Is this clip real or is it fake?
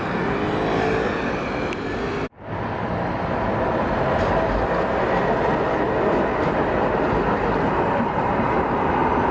real